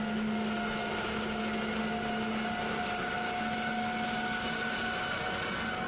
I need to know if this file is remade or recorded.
recorded